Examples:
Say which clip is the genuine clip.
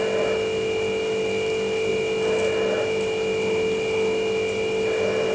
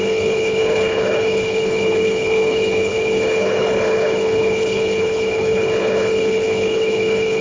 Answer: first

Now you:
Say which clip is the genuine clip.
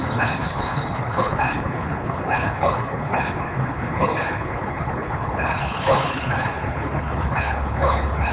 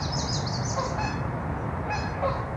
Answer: second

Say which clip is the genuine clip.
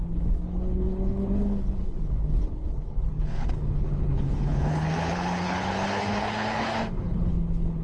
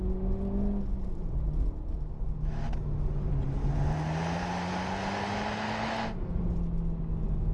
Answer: second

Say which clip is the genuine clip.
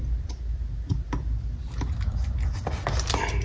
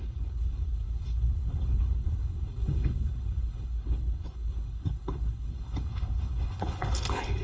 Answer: first